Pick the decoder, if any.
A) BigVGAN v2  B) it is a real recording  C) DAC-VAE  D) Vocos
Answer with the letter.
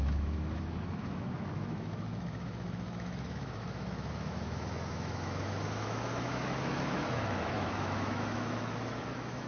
C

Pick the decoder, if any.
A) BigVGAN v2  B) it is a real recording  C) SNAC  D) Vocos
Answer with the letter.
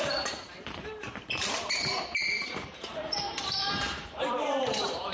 A